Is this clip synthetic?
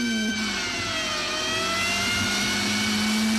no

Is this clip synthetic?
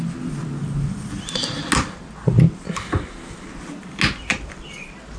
no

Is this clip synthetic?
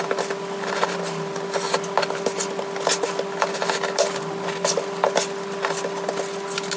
no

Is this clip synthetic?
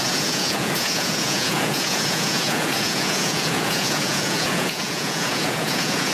yes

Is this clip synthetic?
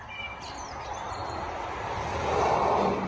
no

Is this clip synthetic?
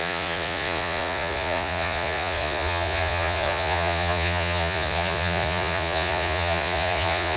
yes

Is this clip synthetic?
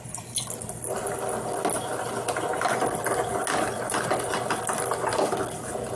no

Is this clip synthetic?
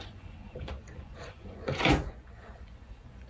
yes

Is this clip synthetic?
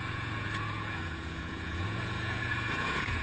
yes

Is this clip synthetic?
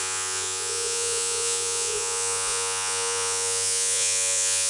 yes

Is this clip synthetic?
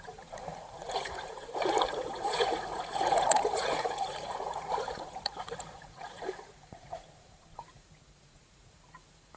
yes